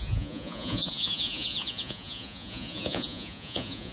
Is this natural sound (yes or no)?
no